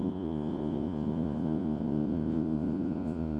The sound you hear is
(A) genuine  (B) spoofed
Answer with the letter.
B